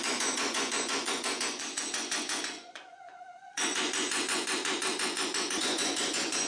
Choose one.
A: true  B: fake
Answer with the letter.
B